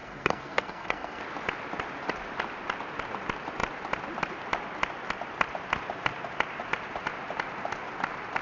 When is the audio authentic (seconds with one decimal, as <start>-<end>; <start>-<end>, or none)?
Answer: 1.2-8.4